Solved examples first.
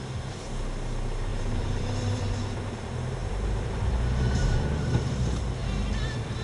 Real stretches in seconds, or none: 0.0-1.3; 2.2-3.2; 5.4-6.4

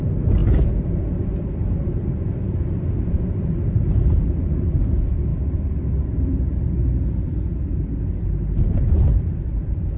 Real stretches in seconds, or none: none

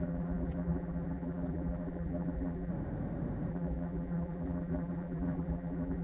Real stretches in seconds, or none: 2.7-3.5

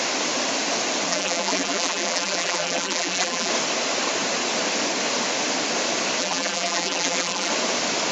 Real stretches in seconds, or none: 0.0-1.1; 3.5-6.2; 7.5-8.1

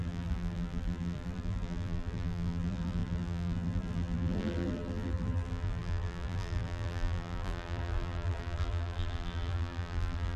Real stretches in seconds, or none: none

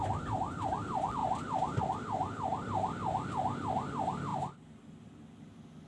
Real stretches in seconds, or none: 2.5-3.4